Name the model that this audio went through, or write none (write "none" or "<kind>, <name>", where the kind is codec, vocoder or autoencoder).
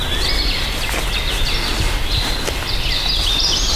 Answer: none